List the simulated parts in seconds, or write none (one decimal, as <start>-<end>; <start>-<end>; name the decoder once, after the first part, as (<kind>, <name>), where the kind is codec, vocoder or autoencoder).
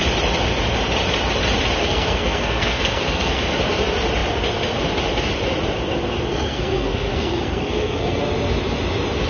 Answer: 1.8-3.4 (codec, SNAC); 6.3-8.2